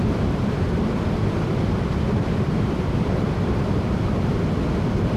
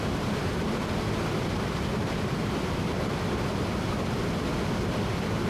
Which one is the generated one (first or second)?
first